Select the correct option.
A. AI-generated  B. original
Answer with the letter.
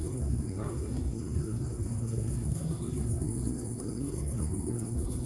A